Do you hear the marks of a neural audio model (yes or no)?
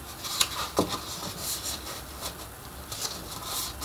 no